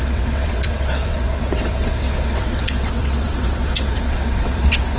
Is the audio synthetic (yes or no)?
yes